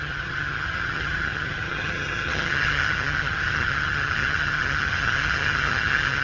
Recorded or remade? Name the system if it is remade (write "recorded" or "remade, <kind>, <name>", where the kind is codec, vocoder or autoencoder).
remade, vocoder, HiFi-GAN